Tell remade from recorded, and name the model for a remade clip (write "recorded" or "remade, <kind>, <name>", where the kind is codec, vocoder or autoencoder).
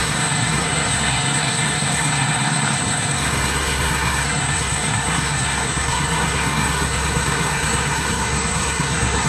remade, codec, SNAC